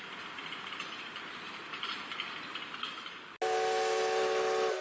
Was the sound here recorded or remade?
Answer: recorded